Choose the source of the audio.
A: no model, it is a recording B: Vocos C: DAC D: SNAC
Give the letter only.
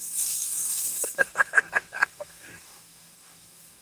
C